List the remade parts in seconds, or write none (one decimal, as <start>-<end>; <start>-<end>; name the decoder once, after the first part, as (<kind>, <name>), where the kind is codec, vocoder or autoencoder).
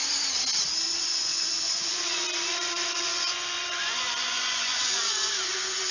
0.9-5.9 (vocoder, Vocos)